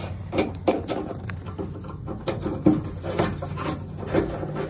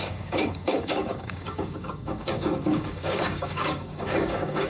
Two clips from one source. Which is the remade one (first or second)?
second